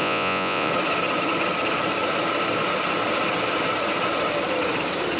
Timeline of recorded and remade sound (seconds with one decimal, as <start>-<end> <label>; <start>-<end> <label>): 0.0-0.7 remade; 0.7-5.2 recorded